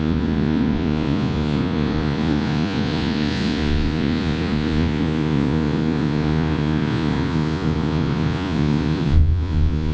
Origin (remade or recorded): remade